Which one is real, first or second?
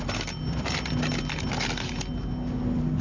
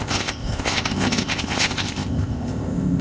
first